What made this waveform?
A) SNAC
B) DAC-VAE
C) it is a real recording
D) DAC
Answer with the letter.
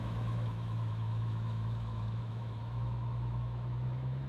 B